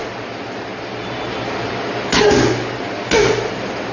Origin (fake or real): real